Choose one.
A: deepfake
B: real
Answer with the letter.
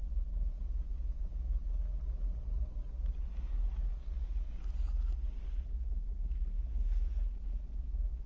B